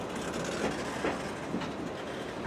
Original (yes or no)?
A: yes